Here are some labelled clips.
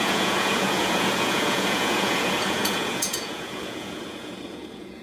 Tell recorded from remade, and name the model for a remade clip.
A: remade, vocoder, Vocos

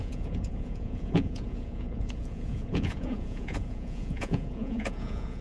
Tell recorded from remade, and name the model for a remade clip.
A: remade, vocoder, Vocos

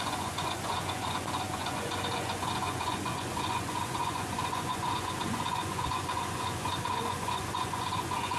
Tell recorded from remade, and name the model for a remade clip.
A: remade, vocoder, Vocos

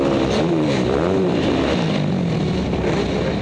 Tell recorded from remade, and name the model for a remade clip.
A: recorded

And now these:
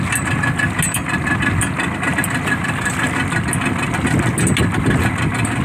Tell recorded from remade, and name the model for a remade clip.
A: recorded